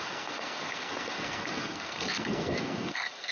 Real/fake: fake